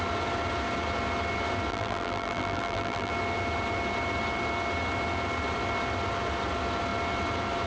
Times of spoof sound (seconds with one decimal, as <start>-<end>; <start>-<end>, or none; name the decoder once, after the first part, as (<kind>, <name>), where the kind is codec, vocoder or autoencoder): 1.7-3.1 (vocoder, BigVGAN v2)